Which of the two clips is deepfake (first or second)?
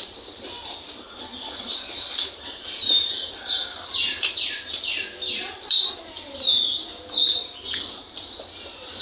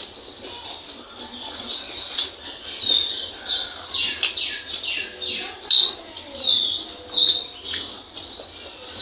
first